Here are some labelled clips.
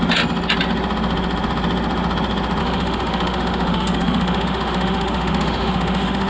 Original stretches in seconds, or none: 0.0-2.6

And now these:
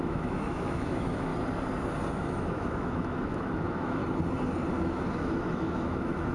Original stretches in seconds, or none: 1.3-2.1; 4.0-4.7

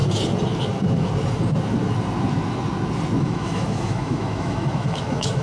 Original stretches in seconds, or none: 0.0-3.2